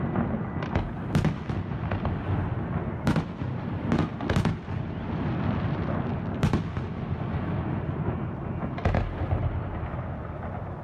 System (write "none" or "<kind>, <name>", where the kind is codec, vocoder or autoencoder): none